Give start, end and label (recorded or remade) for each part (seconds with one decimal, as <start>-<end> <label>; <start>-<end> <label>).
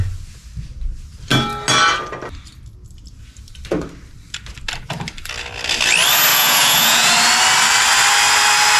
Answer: 0.0-6.3 recorded; 6.3-7.1 remade; 7.1-8.8 recorded